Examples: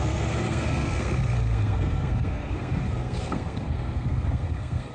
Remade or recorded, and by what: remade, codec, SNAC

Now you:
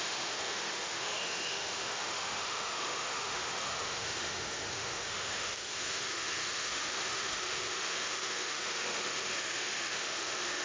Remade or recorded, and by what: remade, autoencoder, DAC-VAE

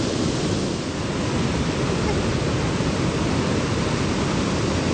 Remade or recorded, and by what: recorded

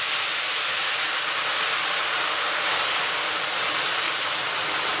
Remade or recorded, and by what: recorded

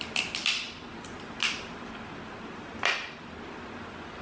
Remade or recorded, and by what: recorded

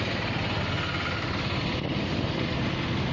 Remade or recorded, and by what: recorded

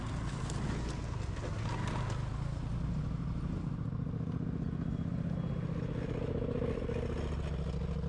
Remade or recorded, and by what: recorded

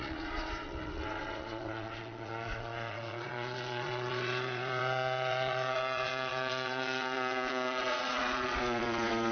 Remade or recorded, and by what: remade, vocoder, Vocos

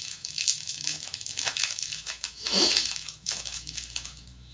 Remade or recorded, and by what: remade, autoencoder, DAC-VAE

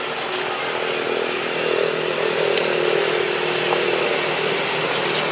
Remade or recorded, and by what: recorded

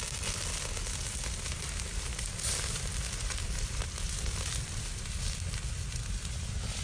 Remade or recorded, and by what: recorded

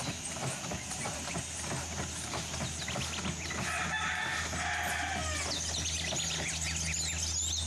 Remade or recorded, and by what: recorded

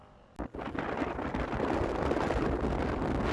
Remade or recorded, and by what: recorded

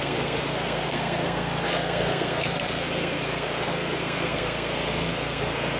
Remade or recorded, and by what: remade, codec, SNAC